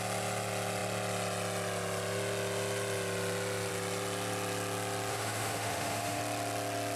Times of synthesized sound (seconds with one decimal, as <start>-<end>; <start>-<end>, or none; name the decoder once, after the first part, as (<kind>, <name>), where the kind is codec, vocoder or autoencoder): 5.1-6.2 (autoencoder, DAC-VAE)